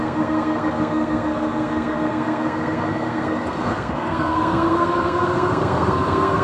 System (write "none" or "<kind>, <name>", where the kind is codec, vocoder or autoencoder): codec, SNAC